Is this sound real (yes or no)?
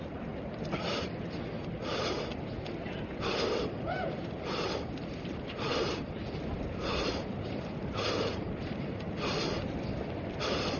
yes